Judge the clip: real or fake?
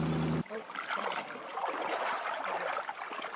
fake